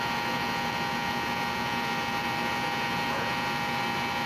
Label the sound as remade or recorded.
remade